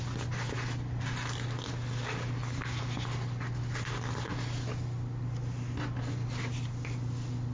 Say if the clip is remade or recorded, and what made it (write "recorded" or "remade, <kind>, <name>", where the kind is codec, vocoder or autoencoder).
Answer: recorded